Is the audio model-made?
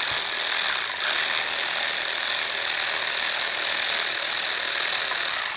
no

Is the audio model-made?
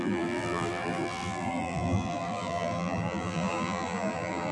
yes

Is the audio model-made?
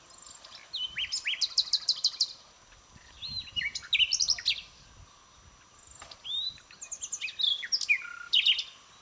no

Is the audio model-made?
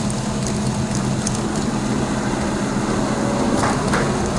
no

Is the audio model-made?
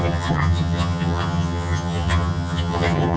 yes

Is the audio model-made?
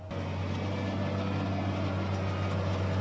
no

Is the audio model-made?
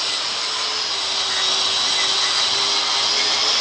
no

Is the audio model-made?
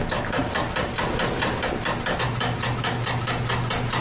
no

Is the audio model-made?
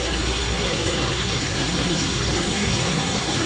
yes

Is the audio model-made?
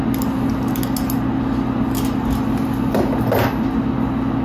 no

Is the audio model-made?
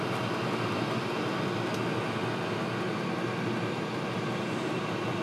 no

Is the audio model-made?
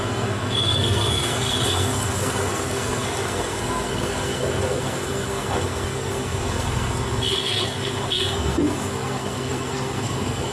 yes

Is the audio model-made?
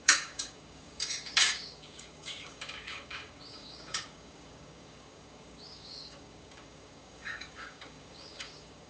yes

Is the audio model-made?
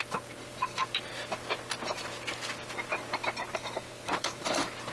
no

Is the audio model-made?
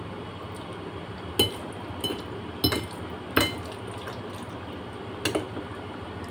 no